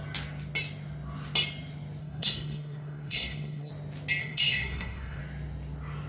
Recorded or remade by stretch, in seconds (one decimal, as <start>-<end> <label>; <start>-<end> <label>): 0.0-2.0 recorded; 2.0-3.7 remade; 3.7-4.2 recorded; 4.2-5.2 remade; 5.2-6.1 recorded